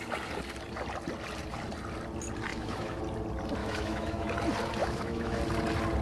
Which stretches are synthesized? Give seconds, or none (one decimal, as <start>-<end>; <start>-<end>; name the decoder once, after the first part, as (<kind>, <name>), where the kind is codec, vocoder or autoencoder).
2.5-3.0 (autoencoder, DAC-VAE); 3.6-4.3; 4.8-5.4